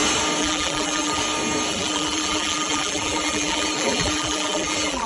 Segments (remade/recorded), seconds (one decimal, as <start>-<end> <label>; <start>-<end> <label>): 0.0-0.4 recorded; 0.4-1.2 remade; 1.2-1.7 recorded; 1.7-5.1 remade